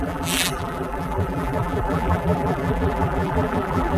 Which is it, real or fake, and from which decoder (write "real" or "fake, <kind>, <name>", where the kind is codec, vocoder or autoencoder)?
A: fake, vocoder, BigVGAN v2